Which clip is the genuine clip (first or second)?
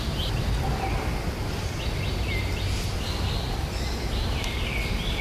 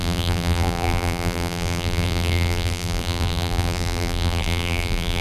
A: first